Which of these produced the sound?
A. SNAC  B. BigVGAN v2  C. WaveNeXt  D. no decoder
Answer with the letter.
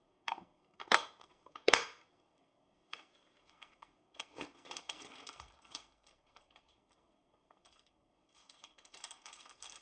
A